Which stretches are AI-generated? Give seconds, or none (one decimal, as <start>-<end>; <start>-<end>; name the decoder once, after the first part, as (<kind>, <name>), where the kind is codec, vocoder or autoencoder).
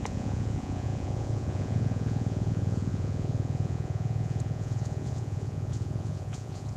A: 0.0-6.8 (vocoder, Vocos)